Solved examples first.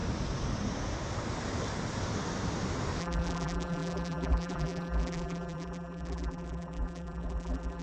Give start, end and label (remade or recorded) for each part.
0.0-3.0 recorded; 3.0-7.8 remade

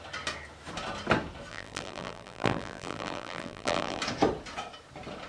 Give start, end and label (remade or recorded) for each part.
0.0-1.5 recorded; 1.5-4.0 remade; 4.0-5.3 recorded

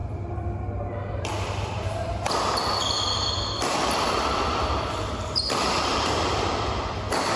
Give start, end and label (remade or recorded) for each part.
0.0-7.4 remade